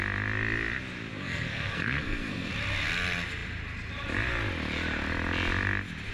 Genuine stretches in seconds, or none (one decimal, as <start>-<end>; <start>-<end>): 0.0-1.1; 2.5-6.1